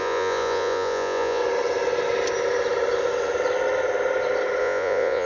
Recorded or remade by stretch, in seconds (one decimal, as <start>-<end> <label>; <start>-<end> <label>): 0.0-1.4 remade; 1.4-4.6 recorded; 4.6-5.3 remade